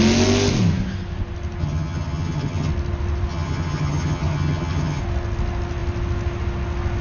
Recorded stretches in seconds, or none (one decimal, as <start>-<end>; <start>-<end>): 0.0-1.6; 2.7-3.3; 5.0-7.0